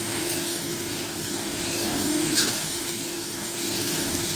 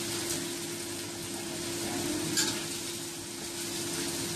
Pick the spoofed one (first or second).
first